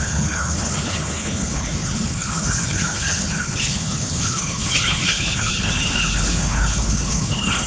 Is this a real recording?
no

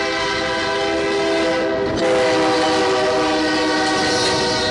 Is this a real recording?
yes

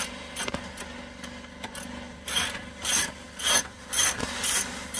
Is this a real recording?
yes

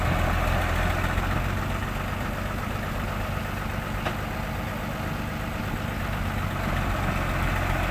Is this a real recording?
yes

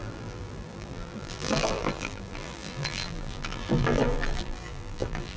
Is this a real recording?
no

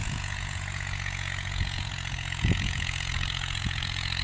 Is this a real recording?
no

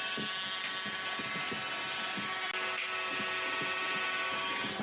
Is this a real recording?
yes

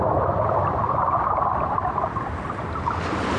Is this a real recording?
yes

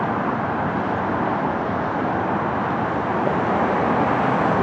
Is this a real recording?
yes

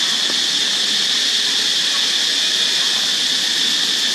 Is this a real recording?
yes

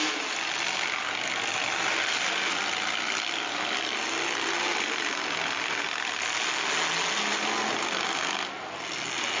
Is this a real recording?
yes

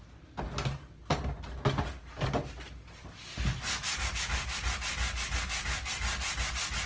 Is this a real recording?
yes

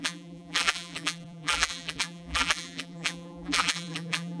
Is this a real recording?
no